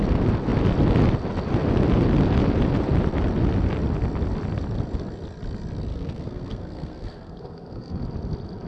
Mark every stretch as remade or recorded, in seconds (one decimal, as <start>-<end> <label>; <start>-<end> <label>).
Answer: 0.0-5.9 recorded; 5.9-8.0 remade; 8.0-8.7 recorded